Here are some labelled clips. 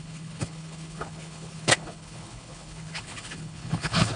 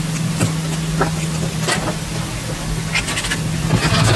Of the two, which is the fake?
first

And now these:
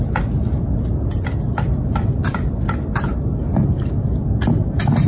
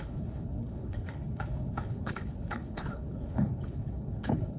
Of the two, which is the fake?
second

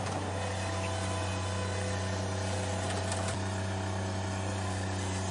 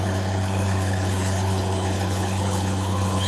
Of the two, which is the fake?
second